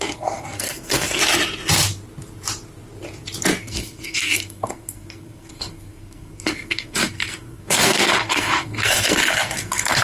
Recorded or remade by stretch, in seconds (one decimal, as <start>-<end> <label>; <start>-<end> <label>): 0.0-1.2 remade; 1.2-3.6 recorded; 3.6-10.0 remade